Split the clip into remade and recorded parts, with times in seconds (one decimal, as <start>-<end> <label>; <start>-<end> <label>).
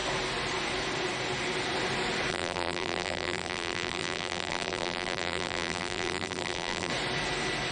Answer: 0.0-2.3 recorded; 2.3-6.9 remade; 6.9-7.7 recorded